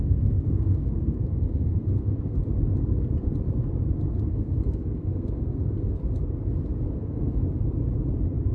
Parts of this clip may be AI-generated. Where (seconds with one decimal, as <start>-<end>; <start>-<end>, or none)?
0.0-2.4; 4.3-6.0; 6.9-7.4